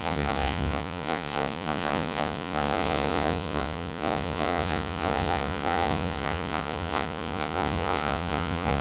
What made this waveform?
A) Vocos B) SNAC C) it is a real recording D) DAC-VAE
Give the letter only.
A